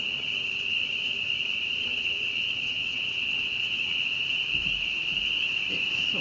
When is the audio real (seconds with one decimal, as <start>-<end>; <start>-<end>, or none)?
0.0-1.9; 4.1-6.2